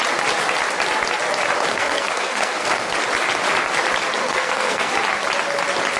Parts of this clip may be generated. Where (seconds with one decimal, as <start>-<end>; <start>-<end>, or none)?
1.7-2.9; 4.2-4.9

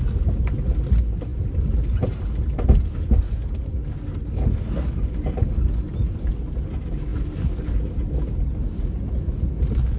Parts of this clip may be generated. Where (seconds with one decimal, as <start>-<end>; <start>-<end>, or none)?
none

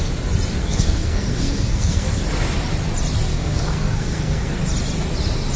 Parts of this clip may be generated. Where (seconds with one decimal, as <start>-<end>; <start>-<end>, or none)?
0.6-2.2; 3.3-4.6

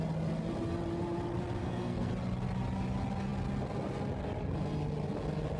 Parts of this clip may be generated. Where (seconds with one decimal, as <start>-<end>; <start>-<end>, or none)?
1.6-2.1

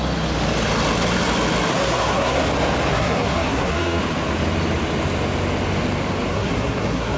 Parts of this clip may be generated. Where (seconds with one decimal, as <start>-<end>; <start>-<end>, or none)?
1.7-2.4; 2.9-4.0; 6.3-7.2

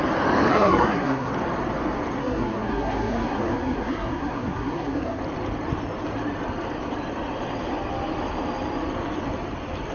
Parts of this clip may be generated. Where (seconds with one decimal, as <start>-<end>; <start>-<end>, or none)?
0.5-1.3; 2.2-5.2

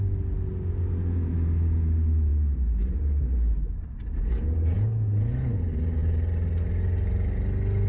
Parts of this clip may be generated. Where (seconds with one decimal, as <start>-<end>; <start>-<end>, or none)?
none

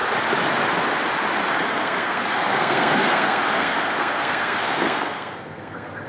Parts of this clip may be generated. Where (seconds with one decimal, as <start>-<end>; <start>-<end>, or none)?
1.7-6.1